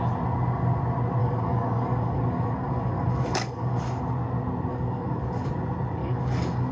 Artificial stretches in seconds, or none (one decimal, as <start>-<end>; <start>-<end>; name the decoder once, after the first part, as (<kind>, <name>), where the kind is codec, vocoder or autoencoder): 1.2-4.0 (codec, DAC); 4.7-5.5; 6.0-6.7

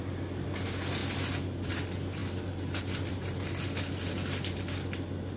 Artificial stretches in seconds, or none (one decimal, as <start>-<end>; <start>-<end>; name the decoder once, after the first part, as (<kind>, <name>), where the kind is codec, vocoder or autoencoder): none

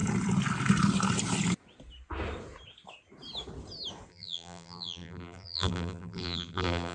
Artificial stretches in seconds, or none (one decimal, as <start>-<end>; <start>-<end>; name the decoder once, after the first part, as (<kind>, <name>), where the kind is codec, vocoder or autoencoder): 4.1-6.9 (vocoder, BigVGAN v2)

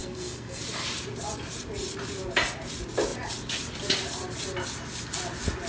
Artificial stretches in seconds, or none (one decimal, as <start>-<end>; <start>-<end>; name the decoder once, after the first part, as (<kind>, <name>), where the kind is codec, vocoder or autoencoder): 0.0-0.6 (codec, SNAC)